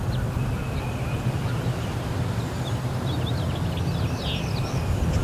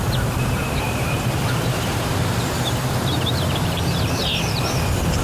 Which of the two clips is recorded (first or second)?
first